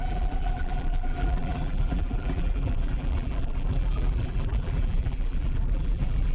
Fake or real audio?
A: fake